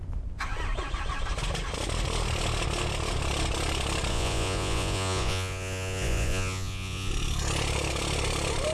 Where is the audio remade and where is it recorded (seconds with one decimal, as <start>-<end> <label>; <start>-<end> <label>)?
0.0-4.1 recorded; 4.1-7.1 remade; 7.1-8.7 recorded

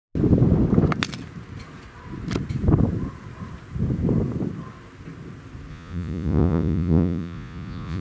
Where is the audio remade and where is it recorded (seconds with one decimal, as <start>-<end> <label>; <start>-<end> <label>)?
0.0-5.7 recorded; 5.7-8.0 remade